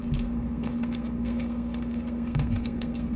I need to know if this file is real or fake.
fake